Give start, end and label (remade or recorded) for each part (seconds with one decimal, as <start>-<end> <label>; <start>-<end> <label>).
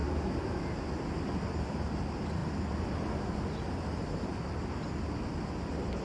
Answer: 0.0-6.0 recorded